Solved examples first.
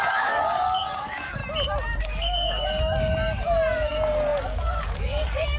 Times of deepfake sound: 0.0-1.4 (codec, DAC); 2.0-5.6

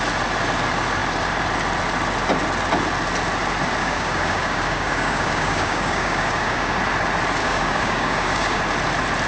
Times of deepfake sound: 3.8-6.8 (codec, DAC); 7.4-8.6

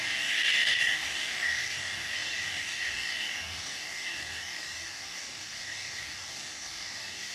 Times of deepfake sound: 0.0-7.3 (codec, DAC)

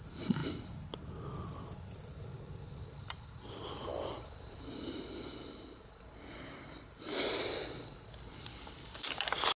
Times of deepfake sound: none

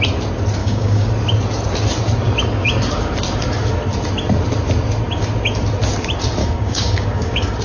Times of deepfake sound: 0.6-1.1 (codec, DAC); 6.4-7.6

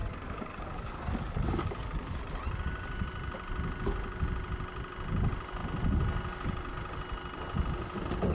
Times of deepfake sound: 0.0-2.2 (codec, DAC)

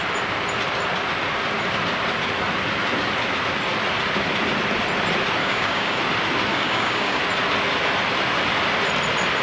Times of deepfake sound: 5.4-6.0 (codec, DAC); 6.5-7.2

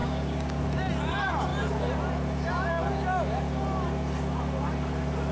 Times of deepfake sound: 0.0-0.6 (codec, DAC)